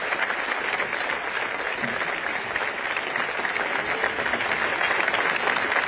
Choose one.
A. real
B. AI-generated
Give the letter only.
A